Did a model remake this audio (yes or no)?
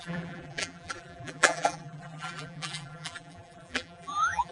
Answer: yes